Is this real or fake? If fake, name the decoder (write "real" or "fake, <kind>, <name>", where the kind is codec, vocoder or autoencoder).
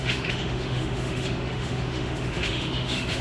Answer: fake, autoencoder, DAC-VAE